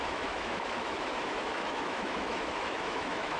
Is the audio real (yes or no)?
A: no